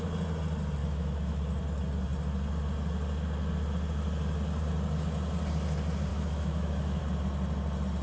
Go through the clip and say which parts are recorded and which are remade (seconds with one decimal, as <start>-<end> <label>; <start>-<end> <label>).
0.0-0.8 recorded; 0.8-1.4 remade; 1.4-6.1 recorded; 6.1-7.0 remade; 7.0-8.0 recorded